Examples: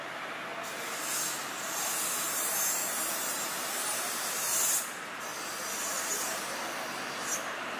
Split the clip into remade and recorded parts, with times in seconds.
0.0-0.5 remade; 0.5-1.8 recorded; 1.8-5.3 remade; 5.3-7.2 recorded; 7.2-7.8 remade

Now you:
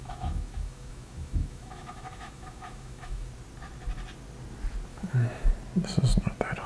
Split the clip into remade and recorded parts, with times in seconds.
0.0-3.3 remade; 3.3-4.9 recorded; 4.9-5.5 remade; 5.5-6.7 recorded

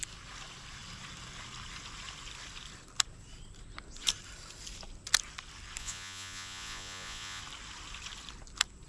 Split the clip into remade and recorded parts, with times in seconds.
0.0-5.8 recorded; 5.8-7.4 remade; 7.4-8.9 recorded

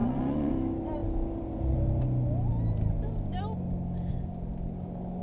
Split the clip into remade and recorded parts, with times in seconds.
0.0-0.5 remade; 0.5-5.2 recorded

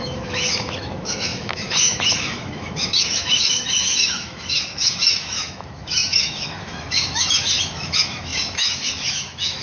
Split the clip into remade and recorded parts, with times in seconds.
0.0-9.6 remade

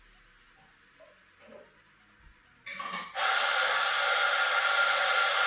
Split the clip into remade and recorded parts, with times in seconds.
0.0-5.5 recorded

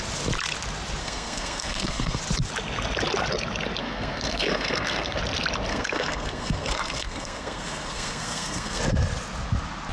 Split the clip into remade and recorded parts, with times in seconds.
0.0-1.0 recorded; 1.0-2.2 remade; 2.2-3.8 recorded; 3.8-5.2 remade; 5.2-5.7 recorded; 5.7-8.8 remade; 8.8-9.9 recorded

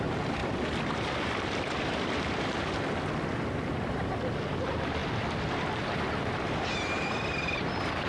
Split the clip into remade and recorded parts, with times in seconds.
0.0-5.0 remade; 5.0-6.6 recorded; 6.6-8.1 remade